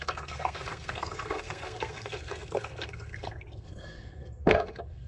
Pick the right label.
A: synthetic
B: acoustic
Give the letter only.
A